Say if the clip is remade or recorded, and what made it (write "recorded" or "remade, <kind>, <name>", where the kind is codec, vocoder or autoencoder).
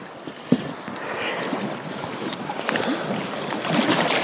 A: recorded